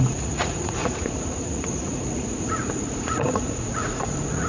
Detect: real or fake fake